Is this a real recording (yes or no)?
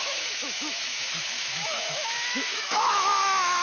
no